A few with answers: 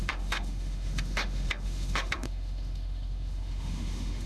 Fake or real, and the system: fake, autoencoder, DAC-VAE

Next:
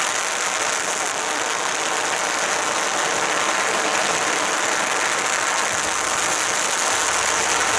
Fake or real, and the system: real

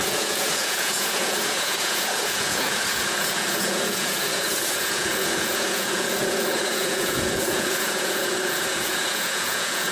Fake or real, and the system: fake, vocoder, Vocos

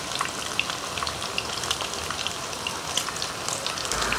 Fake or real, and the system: real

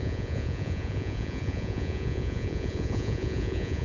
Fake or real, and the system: fake, vocoder, Vocos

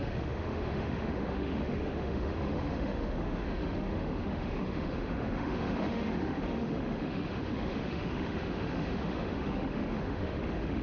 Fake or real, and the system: fake, autoencoder, DAC-VAE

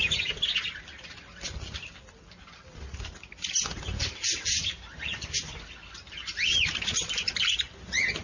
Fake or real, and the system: real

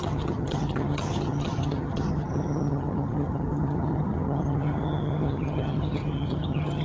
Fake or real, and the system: fake, vocoder, HiFi-GAN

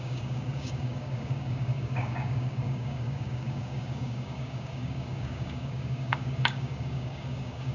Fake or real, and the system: fake, codec, DAC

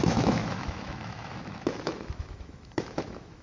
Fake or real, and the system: fake, autoencoder, DAC-VAE